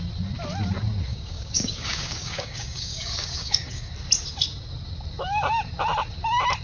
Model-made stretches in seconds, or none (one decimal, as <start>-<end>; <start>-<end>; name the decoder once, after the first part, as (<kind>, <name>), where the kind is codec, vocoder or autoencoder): 1.1-3.9 (codec, DAC)